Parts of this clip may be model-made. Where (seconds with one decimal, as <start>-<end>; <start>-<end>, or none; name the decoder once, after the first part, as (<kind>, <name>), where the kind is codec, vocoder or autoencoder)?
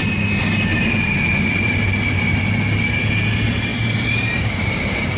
0.7-2.4 (vocoder, BigVGAN v2); 3.7-5.2